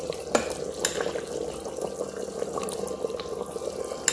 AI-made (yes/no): no